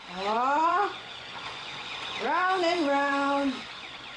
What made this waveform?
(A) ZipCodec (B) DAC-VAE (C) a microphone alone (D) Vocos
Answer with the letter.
D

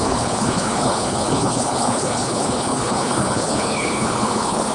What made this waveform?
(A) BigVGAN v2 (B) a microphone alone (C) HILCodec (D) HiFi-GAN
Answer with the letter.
C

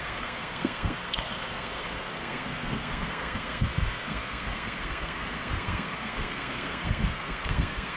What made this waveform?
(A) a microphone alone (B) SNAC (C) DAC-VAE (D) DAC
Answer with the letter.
B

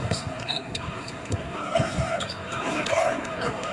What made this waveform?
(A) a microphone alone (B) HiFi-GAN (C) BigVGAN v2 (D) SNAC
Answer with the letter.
D